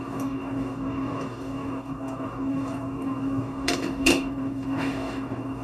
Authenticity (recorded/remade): remade